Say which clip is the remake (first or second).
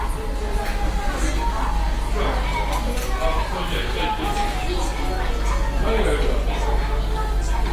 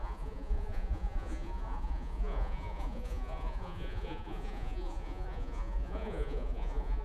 second